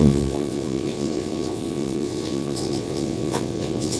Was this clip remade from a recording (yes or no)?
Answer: yes